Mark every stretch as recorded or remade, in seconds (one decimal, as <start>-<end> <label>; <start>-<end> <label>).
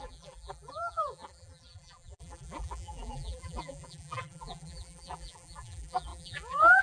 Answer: 0.0-6.8 remade